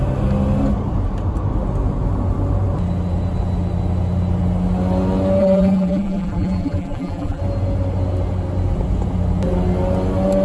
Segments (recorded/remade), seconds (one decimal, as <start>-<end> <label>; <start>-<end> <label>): 0.0-5.4 recorded; 5.4-7.4 remade; 7.4-10.4 recorded